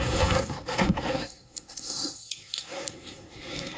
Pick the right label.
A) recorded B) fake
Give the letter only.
B